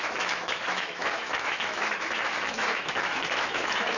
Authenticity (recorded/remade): remade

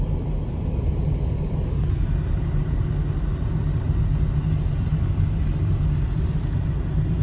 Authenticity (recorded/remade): recorded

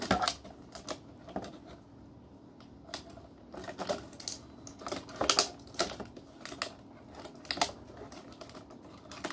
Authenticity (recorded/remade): recorded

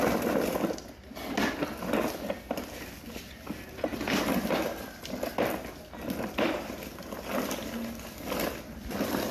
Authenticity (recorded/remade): recorded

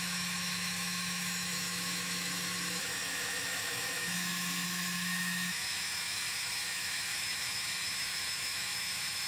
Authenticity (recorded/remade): remade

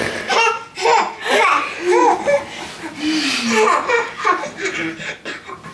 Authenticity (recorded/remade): recorded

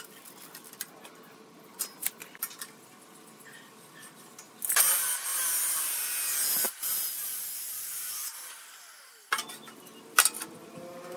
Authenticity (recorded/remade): recorded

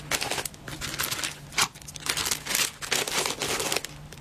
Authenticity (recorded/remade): recorded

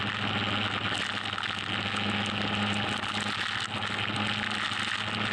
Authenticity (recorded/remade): recorded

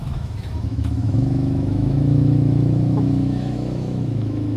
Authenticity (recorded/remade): remade